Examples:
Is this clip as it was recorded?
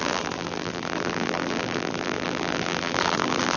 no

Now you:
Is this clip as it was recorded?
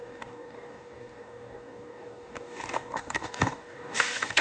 no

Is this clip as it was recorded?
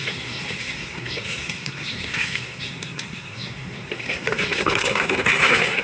no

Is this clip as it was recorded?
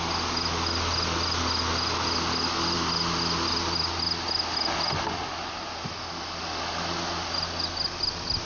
yes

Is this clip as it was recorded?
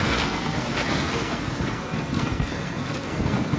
no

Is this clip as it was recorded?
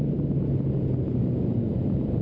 yes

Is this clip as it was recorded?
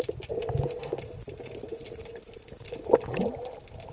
yes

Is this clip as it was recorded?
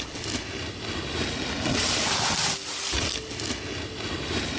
yes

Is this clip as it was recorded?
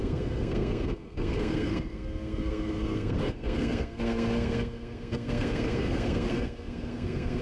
no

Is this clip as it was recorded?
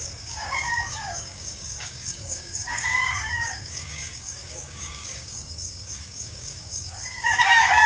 no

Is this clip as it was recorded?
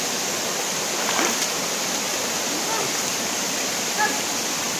yes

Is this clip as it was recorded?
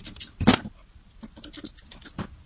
yes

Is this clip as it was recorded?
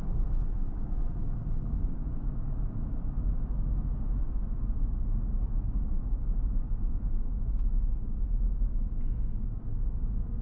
no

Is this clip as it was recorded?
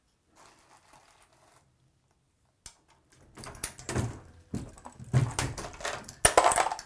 yes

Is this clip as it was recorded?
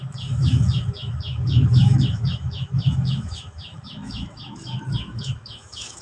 no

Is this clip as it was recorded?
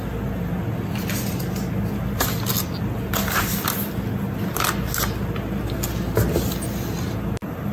yes